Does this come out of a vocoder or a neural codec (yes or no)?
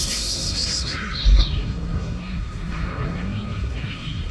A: yes